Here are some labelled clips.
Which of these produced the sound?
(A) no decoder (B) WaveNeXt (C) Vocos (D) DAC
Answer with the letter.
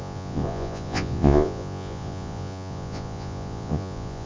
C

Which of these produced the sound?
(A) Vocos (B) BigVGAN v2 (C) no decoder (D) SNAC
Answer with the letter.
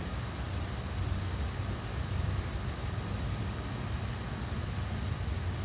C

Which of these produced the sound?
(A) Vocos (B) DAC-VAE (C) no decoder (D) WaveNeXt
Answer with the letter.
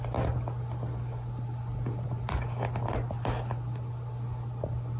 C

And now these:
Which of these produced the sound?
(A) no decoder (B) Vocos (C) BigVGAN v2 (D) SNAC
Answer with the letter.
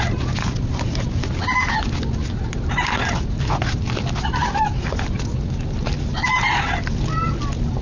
A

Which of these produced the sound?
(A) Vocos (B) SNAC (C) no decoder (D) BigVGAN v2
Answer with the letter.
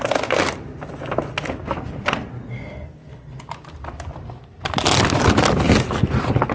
C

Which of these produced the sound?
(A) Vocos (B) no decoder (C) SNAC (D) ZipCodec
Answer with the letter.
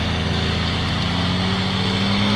B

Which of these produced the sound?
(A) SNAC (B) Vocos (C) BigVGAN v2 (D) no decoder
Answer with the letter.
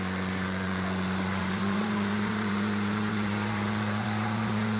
B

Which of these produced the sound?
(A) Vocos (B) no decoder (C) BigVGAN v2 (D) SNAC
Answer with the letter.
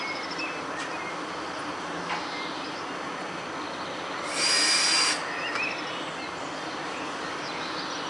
B